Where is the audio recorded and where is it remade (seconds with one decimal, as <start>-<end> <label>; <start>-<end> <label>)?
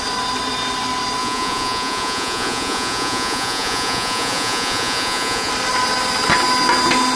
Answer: 0.0-1.2 recorded; 1.2-5.5 remade; 5.5-7.2 recorded